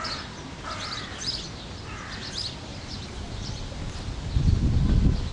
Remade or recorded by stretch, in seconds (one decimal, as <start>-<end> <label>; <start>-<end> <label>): 0.0-1.1 recorded; 1.1-1.6 remade; 1.6-2.7 recorded; 2.7-3.8 remade; 3.8-5.3 recorded